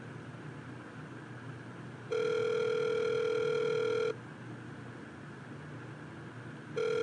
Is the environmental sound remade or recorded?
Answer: recorded